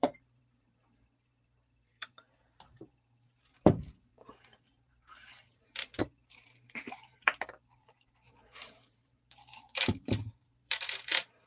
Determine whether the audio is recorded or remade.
remade